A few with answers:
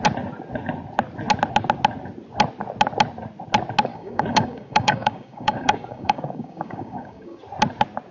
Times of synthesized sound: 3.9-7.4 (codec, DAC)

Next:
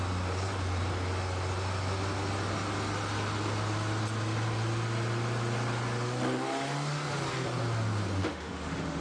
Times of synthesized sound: 8.2-9.0 (autoencoder, DAC-VAE)

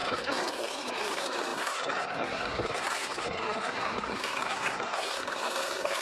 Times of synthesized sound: 0.0-6.0 (codec, SNAC)

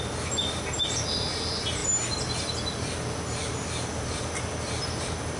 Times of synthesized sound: none

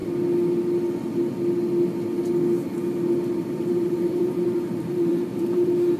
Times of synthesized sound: 3.4-6.0 (vocoder, BigVGAN v2)

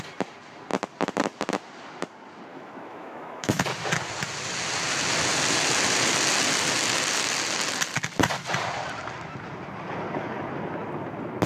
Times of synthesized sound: 2.5-3.6 (autoencoder, DAC-VAE)